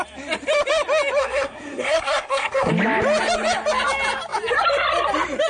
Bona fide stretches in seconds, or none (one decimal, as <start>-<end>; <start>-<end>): 0.0-1.2; 2.7-5.5